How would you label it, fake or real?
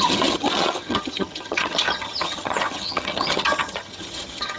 fake